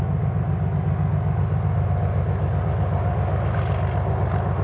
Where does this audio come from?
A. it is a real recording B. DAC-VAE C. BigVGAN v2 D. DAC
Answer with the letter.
A